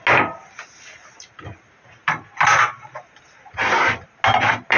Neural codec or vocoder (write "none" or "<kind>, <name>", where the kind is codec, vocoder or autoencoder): none